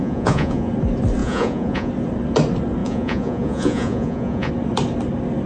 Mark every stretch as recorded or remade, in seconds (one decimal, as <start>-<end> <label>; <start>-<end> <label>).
0.0-0.7 remade; 0.7-1.2 recorded; 1.2-1.9 remade; 1.9-2.8 recorded; 2.8-4.5 remade; 4.5-5.5 recorded